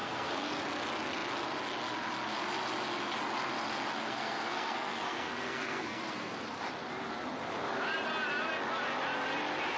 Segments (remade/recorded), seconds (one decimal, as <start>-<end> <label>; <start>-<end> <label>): 0.0-0.5 remade; 0.5-3.9 recorded; 3.9-6.3 remade; 6.3-9.8 recorded